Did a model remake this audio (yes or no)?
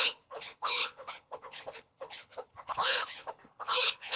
yes